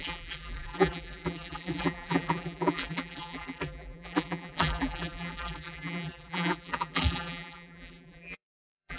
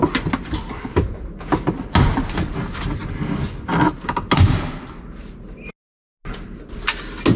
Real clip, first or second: second